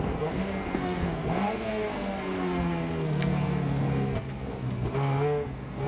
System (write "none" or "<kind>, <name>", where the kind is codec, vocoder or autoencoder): codec, SNAC